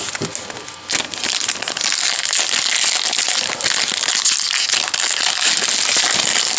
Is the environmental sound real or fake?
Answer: real